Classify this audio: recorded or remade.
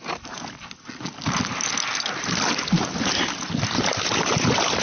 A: recorded